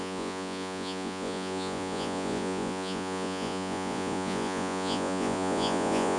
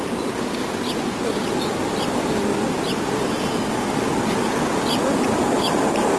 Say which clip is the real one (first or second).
second